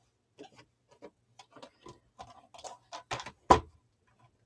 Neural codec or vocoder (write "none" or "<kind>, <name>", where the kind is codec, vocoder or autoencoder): none